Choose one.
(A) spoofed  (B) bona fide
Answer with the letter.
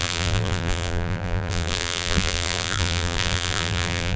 A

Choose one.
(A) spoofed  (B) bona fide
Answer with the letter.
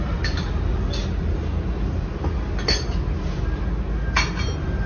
B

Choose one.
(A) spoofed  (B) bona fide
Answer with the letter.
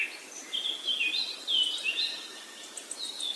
B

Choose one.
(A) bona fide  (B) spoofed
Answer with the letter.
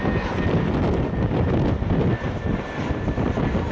A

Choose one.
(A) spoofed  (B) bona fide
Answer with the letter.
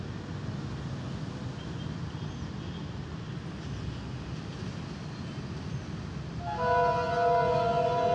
B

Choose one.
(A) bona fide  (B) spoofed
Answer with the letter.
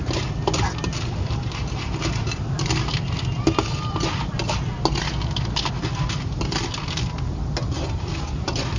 A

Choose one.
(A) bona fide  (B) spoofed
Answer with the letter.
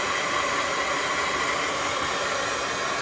A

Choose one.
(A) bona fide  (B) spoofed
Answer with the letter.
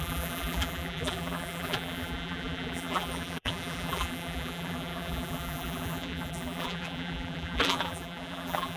B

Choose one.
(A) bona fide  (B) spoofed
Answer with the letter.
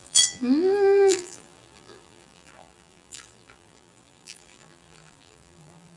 B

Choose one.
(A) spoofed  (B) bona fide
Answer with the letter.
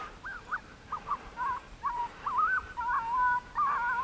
A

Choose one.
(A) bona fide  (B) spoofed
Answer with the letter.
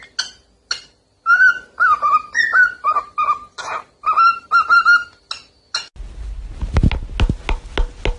A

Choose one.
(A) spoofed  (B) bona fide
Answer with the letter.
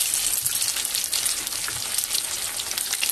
B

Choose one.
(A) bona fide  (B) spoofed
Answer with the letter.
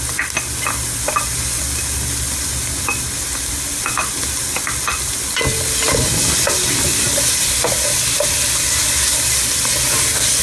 A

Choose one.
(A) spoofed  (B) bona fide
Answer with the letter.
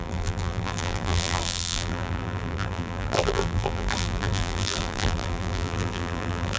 A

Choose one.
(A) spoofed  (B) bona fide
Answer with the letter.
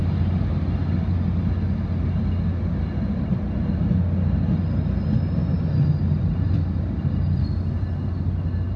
B